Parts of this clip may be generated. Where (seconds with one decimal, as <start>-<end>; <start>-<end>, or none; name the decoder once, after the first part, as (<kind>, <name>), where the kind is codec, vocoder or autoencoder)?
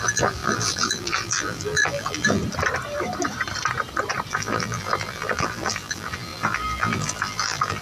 0.0-2.4 (vocoder, BigVGAN v2); 4.3-7.8